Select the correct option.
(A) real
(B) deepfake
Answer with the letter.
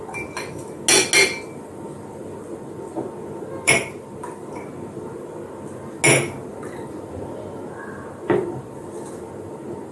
A